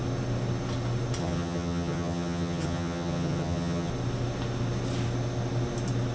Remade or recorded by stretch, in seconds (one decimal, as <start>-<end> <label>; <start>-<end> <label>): 0.0-1.2 recorded; 1.2-3.9 remade; 3.9-6.1 recorded